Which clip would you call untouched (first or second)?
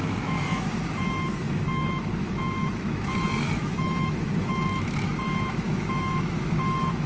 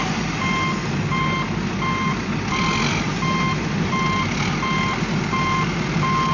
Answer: second